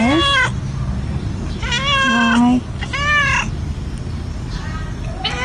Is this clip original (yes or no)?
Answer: yes